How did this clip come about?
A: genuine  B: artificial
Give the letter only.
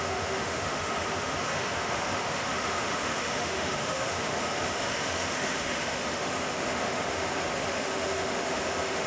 B